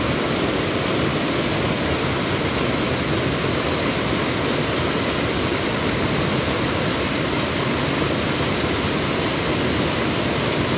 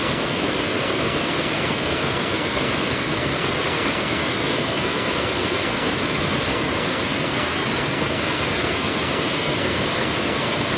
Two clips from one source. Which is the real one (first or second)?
first